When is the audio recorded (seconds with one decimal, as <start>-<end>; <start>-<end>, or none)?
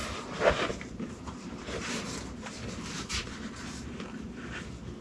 1.8-5.0